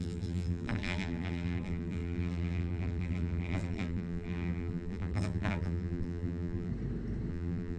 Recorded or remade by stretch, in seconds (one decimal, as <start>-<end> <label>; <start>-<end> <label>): 0.0-6.7 remade; 6.7-7.3 recorded; 7.3-7.8 remade